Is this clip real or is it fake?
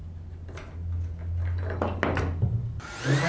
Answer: real